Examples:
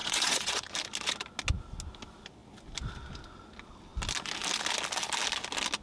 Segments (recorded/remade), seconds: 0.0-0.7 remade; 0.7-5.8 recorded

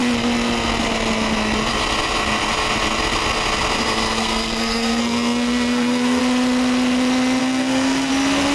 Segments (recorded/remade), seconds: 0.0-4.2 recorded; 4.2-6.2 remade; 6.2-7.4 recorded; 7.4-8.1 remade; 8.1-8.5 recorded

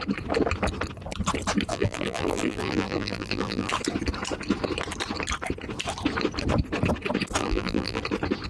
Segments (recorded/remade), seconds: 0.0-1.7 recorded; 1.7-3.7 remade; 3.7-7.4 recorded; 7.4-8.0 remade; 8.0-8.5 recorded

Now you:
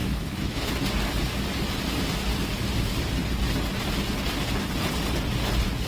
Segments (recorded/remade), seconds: 0.0-0.7 remade; 0.7-5.9 recorded